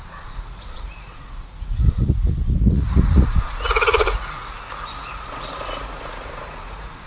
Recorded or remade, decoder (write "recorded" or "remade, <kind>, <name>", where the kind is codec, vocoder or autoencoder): remade, vocoder, Vocos